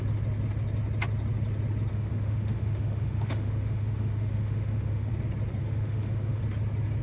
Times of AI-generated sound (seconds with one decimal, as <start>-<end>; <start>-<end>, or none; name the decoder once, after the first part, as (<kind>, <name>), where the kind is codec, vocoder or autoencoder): 1.9-5.1 (autoencoder, DAC-VAE); 5.6-6.4